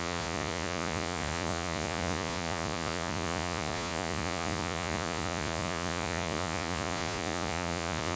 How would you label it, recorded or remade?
remade